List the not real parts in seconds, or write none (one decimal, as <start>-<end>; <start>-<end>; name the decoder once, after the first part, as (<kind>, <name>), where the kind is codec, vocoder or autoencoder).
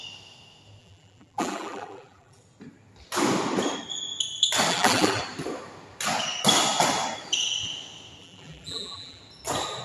0.8-2.4 (vocoder, BigVGAN v2); 4.7-5.2; 8.2-9.2